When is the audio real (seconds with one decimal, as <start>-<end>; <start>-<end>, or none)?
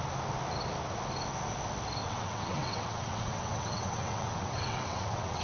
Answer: 0.0-2.0